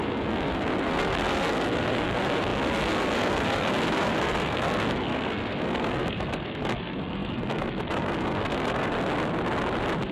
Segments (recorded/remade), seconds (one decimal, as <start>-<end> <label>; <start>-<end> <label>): 0.0-8.9 remade; 8.9-10.1 recorded